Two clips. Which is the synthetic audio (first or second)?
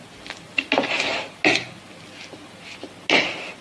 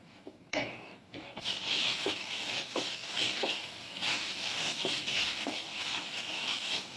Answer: second